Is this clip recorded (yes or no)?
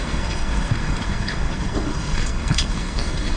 no